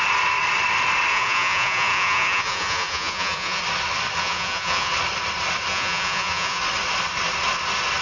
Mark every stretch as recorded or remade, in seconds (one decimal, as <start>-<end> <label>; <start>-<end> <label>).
0.0-1.1 recorded; 1.1-3.6 remade; 3.6-4.2 recorded; 4.2-4.9 remade; 4.9-5.7 recorded; 5.7-6.6 remade; 6.6-8.0 recorded

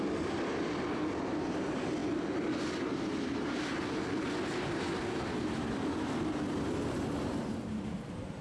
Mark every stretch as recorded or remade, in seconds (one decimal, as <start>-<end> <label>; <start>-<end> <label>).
0.0-8.4 recorded

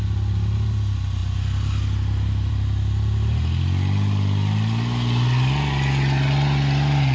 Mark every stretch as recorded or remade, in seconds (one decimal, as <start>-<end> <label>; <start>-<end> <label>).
0.0-7.1 recorded

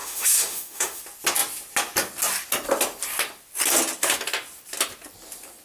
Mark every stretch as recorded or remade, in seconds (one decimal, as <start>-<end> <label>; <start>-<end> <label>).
0.0-1.0 remade; 1.0-5.6 recorded

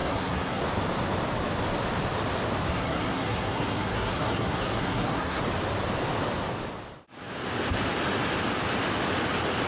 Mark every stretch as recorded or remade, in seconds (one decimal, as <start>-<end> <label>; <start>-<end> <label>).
0.0-0.6 remade; 0.6-2.7 recorded; 2.7-5.4 remade; 5.4-9.7 recorded

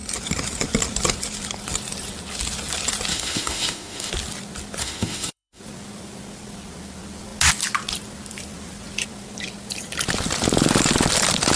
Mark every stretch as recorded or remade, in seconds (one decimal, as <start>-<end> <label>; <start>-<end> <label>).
0.0-3.1 recorded; 3.1-4.1 remade; 4.1-4.8 recorded; 4.8-5.6 remade; 5.6-11.6 recorded